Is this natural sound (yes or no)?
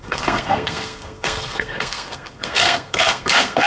no